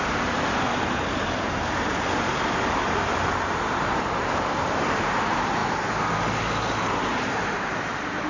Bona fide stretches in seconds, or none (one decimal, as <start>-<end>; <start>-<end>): 5.6-6.9

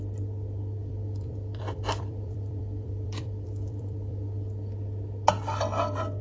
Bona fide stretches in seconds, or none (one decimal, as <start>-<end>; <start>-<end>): 0.0-0.8; 4.5-6.2

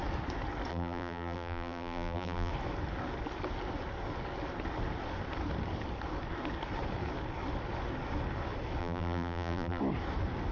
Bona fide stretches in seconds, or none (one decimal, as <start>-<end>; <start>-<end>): 0.0-0.7; 2.5-8.8; 9.8-10.5